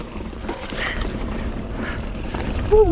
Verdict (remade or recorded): remade